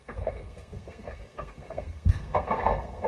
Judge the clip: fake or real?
fake